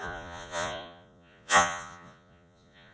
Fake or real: fake